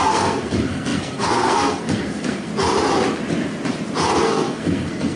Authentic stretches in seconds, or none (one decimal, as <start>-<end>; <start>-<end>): 2.5-4.2